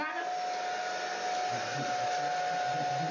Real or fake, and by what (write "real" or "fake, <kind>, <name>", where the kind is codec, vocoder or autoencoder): real